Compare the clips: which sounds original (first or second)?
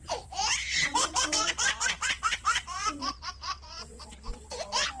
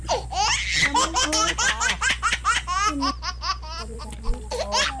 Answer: second